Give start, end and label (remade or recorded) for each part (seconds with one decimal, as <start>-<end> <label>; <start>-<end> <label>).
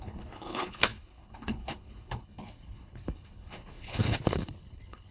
0.0-5.1 remade